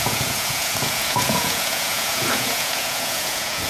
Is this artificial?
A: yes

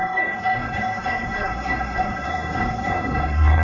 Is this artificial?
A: yes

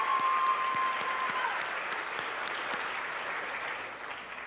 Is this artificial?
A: no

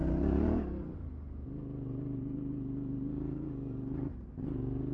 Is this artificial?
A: no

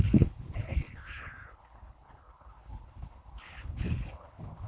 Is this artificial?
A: yes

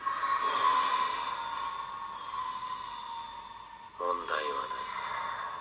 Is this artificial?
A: no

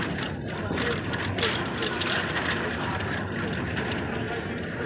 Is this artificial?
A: no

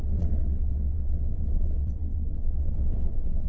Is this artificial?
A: yes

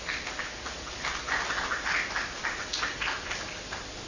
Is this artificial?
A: no